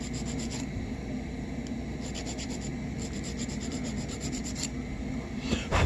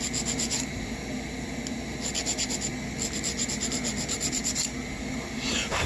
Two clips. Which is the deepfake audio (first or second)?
first